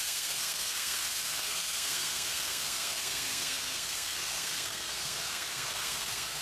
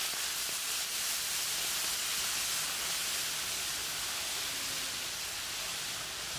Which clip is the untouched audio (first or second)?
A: second